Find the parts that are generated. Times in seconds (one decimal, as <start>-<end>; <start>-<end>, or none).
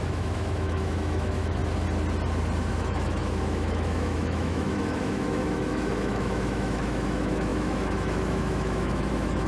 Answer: 0.0-1.6; 2.7-9.5